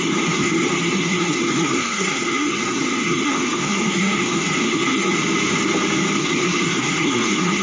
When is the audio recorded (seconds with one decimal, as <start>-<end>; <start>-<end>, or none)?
5.1-6.2